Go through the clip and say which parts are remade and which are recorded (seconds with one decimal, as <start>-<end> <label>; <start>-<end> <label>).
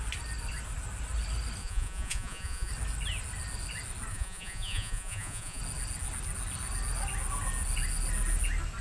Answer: 0.0-1.6 recorded; 1.6-2.7 remade; 2.7-4.1 recorded; 4.1-5.6 remade; 5.6-8.8 recorded